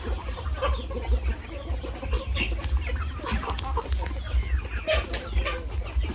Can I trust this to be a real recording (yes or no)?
yes